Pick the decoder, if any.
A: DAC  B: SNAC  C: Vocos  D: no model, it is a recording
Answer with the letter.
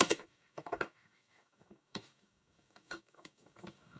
A